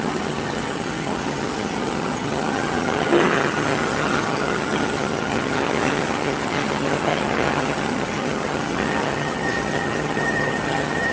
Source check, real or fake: fake